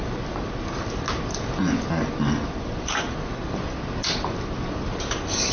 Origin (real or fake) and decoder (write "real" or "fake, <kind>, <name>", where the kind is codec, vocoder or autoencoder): real